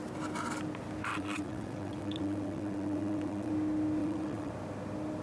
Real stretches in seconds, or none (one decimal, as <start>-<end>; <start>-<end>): 0.0-1.1; 3.5-4.0; 4.5-5.2